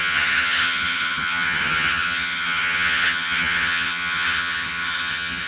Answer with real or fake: fake